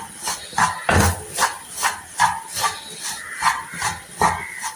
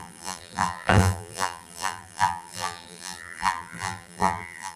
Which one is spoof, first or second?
second